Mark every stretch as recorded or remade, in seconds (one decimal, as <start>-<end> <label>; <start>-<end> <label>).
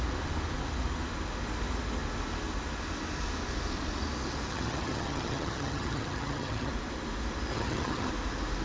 0.0-4.5 recorded; 4.5-6.7 remade; 6.7-7.5 recorded; 7.5-8.1 remade; 8.1-8.6 recorded